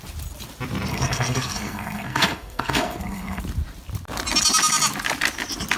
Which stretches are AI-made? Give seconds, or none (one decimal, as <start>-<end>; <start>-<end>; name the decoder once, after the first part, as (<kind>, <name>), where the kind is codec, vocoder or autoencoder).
0.9-3.4 (codec, SNAC)